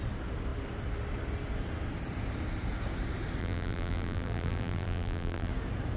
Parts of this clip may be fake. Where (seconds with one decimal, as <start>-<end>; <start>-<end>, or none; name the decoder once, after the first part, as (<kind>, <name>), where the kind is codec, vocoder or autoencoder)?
3.4-5.5 (vocoder, BigVGAN v2)